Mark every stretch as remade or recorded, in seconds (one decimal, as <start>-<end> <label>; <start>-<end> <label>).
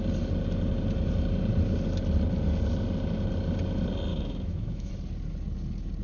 0.0-4.1 recorded; 4.1-4.9 remade; 4.9-6.0 recorded